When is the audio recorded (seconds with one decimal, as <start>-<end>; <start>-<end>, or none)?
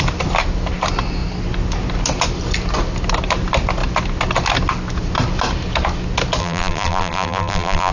0.0-6.4